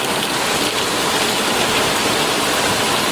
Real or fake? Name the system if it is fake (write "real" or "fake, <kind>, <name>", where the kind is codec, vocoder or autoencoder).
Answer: fake, vocoder, BigVGAN v2